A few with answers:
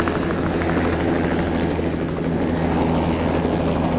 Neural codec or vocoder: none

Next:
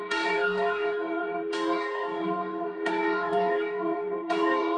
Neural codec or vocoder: codec, DAC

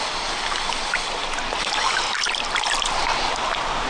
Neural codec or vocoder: none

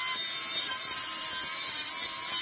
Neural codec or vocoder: none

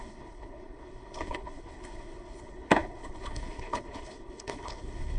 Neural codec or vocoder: codec, HILCodec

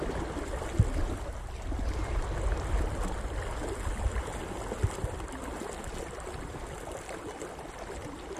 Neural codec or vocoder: none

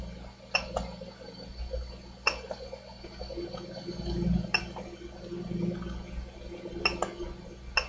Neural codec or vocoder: none